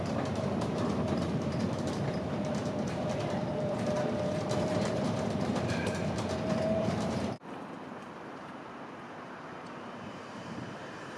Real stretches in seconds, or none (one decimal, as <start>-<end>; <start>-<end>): 8.6-9.4